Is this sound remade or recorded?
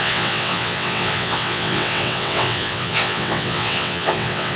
remade